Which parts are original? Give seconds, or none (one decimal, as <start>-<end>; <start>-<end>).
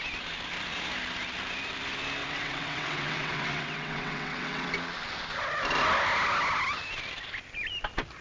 0.0-2.2; 4.7-8.2